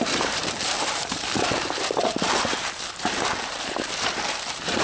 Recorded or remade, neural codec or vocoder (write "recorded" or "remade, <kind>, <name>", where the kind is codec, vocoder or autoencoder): remade, vocoder, BigVGAN v2